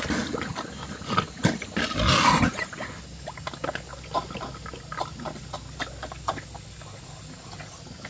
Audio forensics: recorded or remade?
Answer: recorded